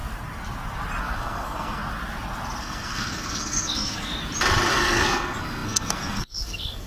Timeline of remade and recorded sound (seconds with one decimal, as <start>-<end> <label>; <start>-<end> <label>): 0.0-1.0 recorded; 1.0-1.8 remade; 1.8-2.6 recorded; 2.6-4.1 remade; 4.1-4.7 recorded; 4.7-6.9 remade